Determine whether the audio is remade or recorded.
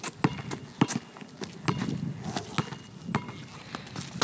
recorded